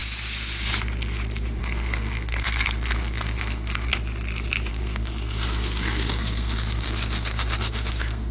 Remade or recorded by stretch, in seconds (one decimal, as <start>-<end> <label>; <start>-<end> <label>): 0.0-1.6 recorded; 1.6-3.9 remade; 3.9-4.7 recorded; 4.7-8.3 remade